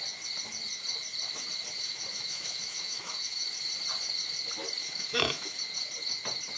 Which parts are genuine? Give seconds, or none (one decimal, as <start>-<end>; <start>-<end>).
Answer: 0.0-1.9; 3.5-4.8; 5.6-6.6